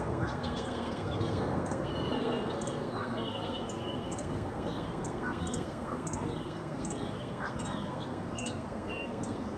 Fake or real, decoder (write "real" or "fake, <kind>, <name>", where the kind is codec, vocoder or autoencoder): fake, codec, SNAC